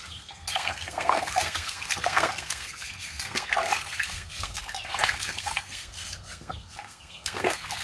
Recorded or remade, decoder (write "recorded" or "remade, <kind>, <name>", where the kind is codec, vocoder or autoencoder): remade, codec, SNAC